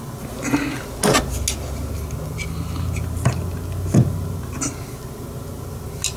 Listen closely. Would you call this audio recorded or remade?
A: recorded